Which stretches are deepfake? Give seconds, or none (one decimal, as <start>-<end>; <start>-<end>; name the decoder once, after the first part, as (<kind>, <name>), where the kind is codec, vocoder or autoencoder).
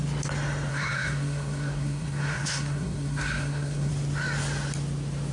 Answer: 0.7-3.9 (codec, SNAC)